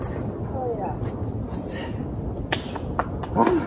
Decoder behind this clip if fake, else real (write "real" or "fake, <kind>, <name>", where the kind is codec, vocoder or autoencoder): real